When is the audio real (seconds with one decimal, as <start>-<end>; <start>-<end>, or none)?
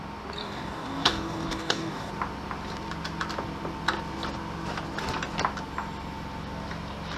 0.0-0.4; 2.1-7.2